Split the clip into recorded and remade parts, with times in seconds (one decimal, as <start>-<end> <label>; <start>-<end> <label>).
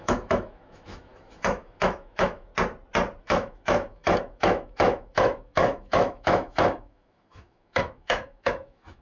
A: 0.0-2.5 remade; 2.5-3.2 recorded; 3.2-9.0 remade